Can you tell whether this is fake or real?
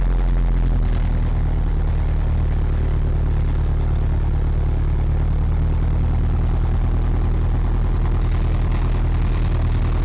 real